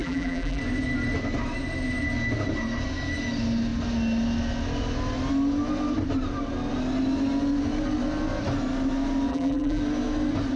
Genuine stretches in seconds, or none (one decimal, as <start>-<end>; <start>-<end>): 0.6-9.3; 9.8-10.6